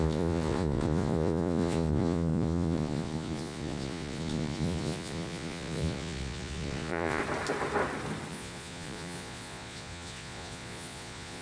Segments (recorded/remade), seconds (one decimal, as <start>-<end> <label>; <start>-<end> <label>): 0.0-7.2 remade; 7.2-8.3 recorded; 8.3-11.4 remade